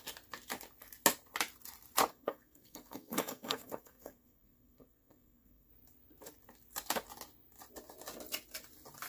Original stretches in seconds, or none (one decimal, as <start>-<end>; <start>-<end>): 0.0-2.1; 5.7-9.1